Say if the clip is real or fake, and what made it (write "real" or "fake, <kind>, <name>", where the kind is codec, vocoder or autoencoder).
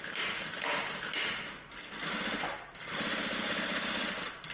real